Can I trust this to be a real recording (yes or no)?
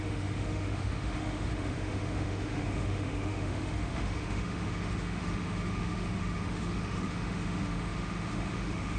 no